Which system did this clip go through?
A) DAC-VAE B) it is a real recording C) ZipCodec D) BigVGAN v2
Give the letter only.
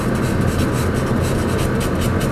B